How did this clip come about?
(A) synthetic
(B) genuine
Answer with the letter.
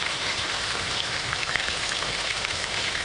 A